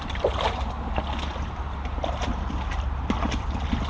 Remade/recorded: recorded